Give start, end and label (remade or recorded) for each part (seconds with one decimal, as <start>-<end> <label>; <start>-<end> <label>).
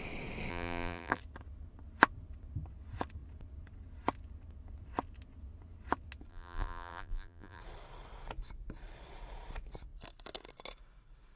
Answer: 0.0-0.5 recorded; 0.5-1.2 remade; 1.2-6.3 recorded; 6.3-7.6 remade; 7.6-11.4 recorded